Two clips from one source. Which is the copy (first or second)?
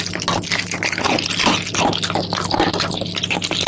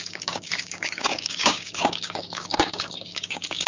second